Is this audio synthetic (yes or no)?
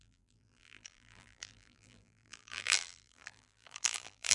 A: yes